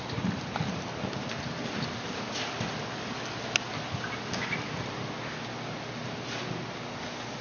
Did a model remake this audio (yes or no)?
no